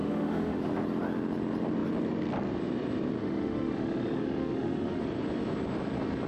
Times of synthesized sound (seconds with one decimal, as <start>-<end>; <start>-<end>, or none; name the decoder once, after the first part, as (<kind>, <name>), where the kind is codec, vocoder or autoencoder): 0.0-0.6 (autoencoder, DAC-VAE); 3.2-5.0